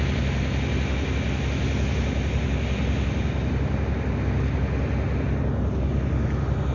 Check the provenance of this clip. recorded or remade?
recorded